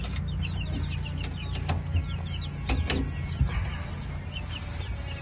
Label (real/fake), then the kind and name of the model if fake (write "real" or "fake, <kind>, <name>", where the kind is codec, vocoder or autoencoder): real